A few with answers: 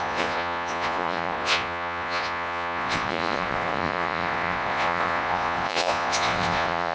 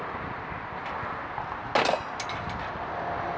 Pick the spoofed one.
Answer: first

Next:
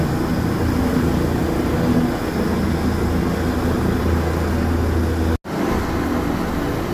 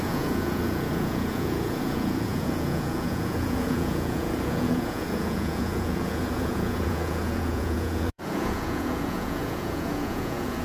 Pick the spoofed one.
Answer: second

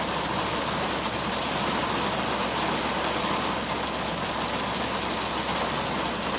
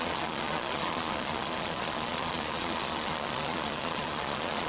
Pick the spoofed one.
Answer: second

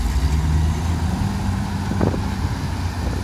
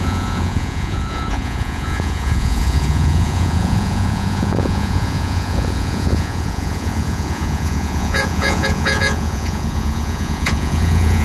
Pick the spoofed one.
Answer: second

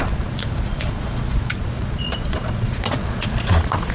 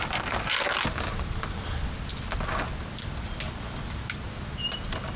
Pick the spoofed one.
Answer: first